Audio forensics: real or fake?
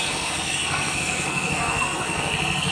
fake